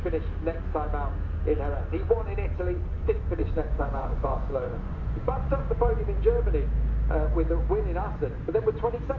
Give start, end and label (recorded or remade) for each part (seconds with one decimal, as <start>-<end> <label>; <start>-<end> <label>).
0.0-2.9 recorded; 2.9-5.9 remade; 5.9-9.2 recorded